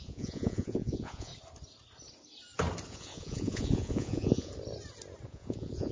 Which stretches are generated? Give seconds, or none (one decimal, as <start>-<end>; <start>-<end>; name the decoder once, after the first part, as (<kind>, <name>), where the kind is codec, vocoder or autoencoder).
0.0-1.3 (vocoder, Vocos); 2.9-4.5; 5.3-5.9